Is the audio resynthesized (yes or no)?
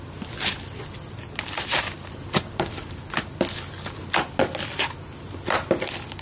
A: no